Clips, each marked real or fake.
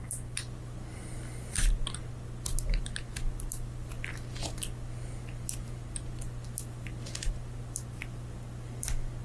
real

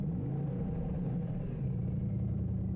fake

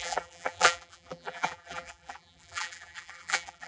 fake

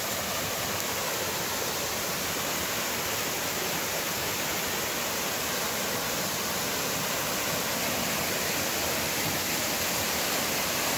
real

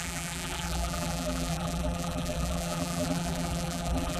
fake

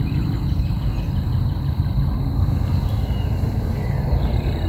fake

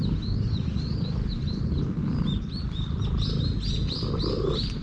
real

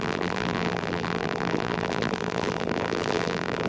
fake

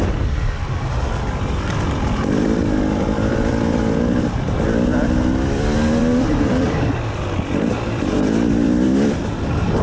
fake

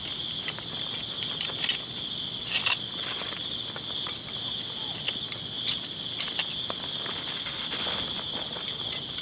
real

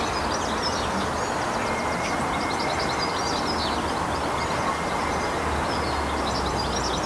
real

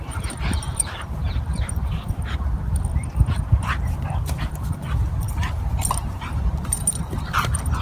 fake